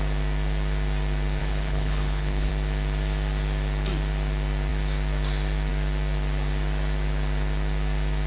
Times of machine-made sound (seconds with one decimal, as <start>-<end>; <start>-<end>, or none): 1.4-2.5